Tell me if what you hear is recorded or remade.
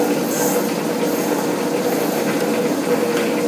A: recorded